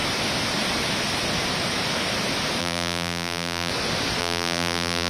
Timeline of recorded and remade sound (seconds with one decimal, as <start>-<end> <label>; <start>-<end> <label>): 0.0-2.6 recorded; 2.6-3.7 remade; 3.7-4.2 recorded; 4.2-5.1 remade